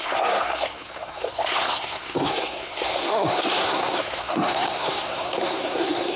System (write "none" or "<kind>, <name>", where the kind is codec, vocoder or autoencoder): codec, SNAC